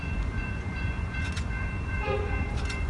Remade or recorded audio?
remade